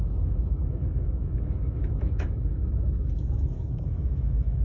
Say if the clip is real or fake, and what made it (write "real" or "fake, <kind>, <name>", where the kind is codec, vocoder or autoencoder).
fake, autoencoder, DAC-VAE